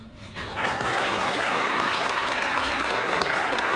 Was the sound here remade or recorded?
remade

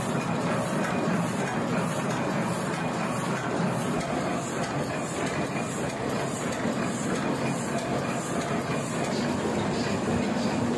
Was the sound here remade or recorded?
recorded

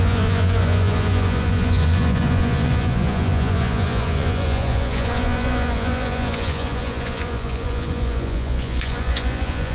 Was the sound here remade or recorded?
remade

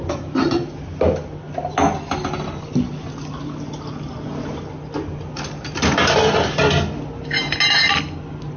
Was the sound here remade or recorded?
recorded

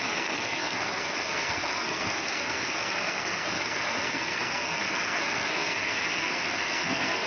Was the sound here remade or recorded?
remade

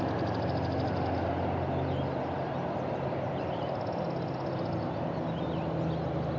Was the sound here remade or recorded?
recorded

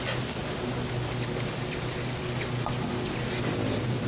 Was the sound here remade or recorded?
recorded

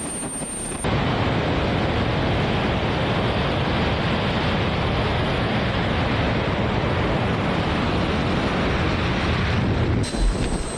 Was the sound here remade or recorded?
recorded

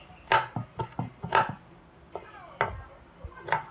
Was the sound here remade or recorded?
recorded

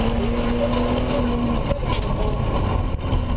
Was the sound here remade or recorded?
recorded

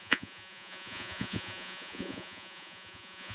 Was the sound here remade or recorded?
remade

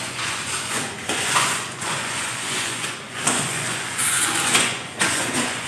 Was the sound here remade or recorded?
remade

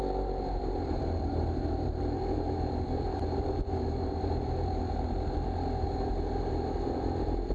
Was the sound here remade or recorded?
remade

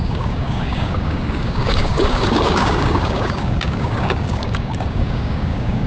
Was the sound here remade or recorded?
remade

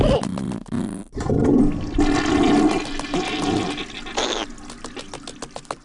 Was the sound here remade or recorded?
recorded